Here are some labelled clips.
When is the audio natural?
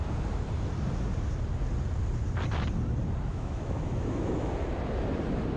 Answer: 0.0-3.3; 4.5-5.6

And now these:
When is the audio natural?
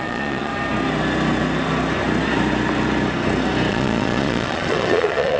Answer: 0.5-3.7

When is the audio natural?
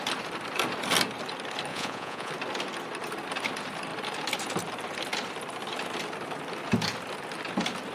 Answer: 0.0-1.7; 2.3-7.9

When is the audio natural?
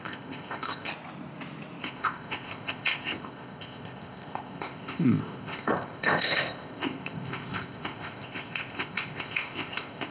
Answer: 0.9-1.8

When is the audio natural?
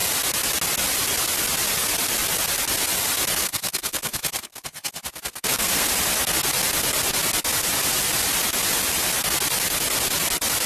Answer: 0.0-3.4; 5.9-10.7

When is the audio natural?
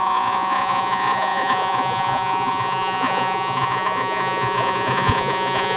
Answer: none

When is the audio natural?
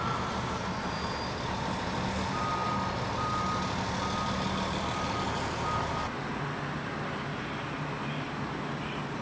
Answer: 0.0-9.2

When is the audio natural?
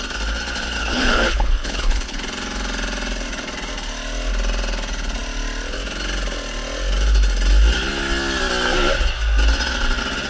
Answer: 0.0-0.8; 2.2-10.3